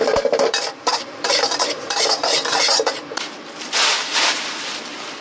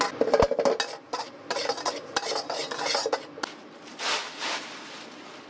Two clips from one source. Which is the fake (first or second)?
first